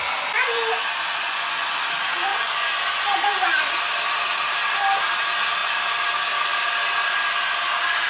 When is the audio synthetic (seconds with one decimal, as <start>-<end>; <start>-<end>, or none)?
1.1-1.8; 2.3-2.8